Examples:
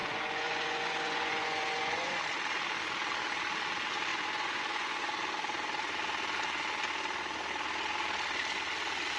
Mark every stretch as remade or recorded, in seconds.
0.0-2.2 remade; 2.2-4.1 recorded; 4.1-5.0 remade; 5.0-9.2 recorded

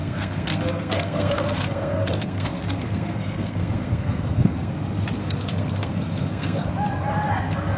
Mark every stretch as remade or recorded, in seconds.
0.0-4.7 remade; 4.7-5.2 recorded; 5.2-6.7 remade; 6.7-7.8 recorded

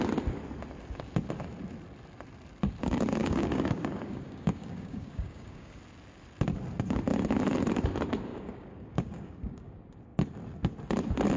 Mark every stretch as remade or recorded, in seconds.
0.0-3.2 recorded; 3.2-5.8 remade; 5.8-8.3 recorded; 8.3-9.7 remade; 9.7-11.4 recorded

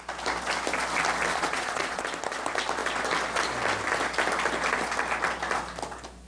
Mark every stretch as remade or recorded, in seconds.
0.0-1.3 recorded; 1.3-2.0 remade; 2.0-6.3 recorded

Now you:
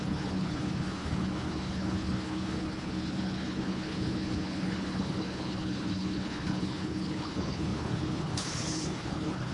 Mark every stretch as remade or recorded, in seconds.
0.0-9.5 remade

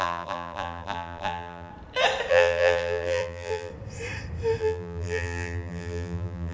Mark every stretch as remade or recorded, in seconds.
0.0-1.7 remade; 1.7-2.3 recorded; 2.3-3.7 remade; 3.7-4.6 recorded; 4.6-6.5 remade